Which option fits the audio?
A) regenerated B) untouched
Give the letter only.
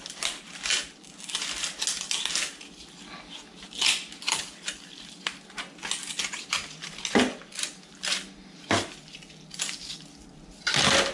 B